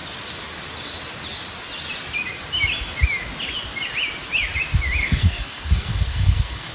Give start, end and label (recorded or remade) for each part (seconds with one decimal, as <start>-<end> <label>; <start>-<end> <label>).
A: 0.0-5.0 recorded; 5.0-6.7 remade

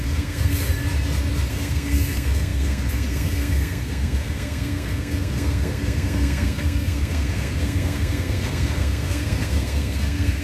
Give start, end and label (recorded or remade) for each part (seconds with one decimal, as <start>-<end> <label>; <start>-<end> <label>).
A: 0.0-0.7 remade; 0.7-1.5 recorded; 1.5-10.4 remade

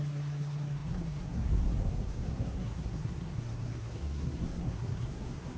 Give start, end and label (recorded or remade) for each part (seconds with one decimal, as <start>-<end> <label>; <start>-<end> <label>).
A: 0.0-5.6 remade

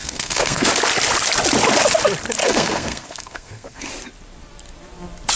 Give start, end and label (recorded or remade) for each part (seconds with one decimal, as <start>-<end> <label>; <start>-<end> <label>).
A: 0.0-0.7 remade; 0.7-2.4 recorded; 2.4-3.9 remade; 3.9-5.4 recorded

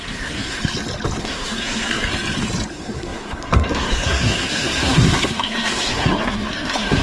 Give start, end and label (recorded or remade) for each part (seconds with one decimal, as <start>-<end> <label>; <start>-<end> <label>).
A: 0.0-0.6 remade; 0.6-1.2 recorded; 1.2-2.1 remade; 2.1-2.7 recorded; 2.7-7.0 remade

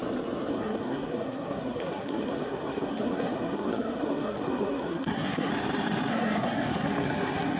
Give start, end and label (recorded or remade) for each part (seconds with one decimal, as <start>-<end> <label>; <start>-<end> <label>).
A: 0.0-0.5 recorded; 0.5-5.5 remade; 5.5-6.1 recorded; 6.1-7.6 remade